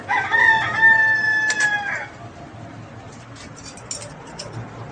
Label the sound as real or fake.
real